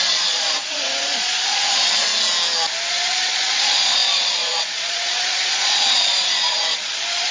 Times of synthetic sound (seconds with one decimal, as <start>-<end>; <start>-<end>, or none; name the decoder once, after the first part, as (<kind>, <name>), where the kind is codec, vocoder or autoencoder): 0.0-2.1 (vocoder, Vocos); 2.9-7.3